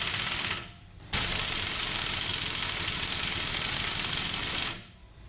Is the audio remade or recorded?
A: remade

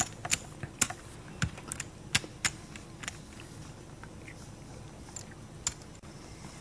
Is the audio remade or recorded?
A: recorded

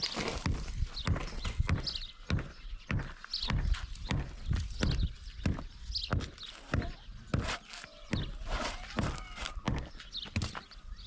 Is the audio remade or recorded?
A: recorded